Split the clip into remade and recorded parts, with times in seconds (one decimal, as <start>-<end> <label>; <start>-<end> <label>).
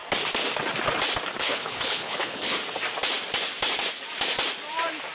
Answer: 0.0-1.4 recorded; 1.4-2.6 remade; 2.6-5.1 recorded